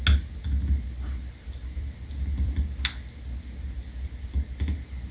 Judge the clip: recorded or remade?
recorded